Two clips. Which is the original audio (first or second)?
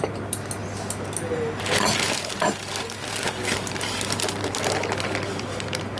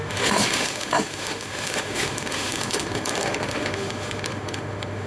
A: first